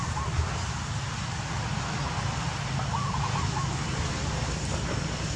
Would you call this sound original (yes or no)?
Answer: yes